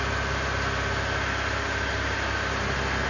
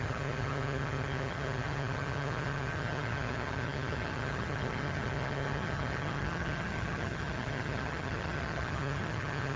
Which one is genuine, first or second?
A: first